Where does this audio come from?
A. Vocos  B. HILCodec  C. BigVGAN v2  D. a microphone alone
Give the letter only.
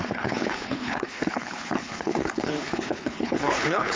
B